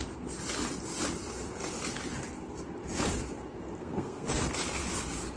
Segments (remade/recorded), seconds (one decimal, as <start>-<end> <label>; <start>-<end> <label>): 0.0-3.8 recorded; 3.8-4.4 remade; 4.4-5.4 recorded